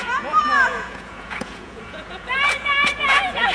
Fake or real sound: fake